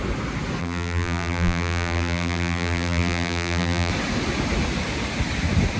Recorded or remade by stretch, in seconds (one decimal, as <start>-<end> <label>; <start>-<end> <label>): 0.0-0.6 recorded; 0.6-3.9 remade; 3.9-5.8 recorded